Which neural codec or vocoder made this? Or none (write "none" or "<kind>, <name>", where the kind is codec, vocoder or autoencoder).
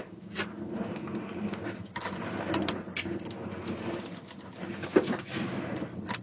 none